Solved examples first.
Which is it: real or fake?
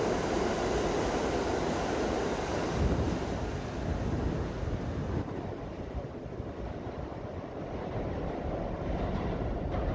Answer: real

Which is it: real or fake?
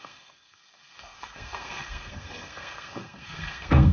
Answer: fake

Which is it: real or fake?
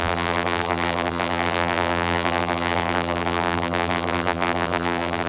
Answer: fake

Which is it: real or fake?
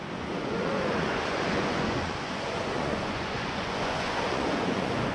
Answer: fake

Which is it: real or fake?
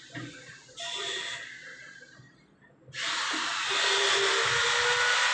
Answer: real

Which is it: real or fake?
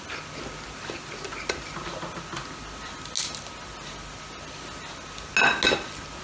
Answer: real